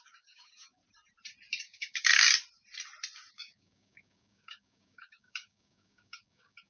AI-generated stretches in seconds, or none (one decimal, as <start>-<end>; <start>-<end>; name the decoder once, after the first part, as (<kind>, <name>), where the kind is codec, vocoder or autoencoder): 0.0-0.8 (codec, DAC); 1.6-2.1; 3.3-6.7